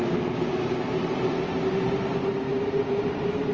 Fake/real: real